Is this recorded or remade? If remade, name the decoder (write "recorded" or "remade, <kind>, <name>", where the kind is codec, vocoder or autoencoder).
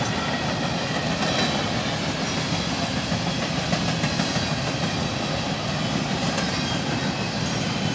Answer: recorded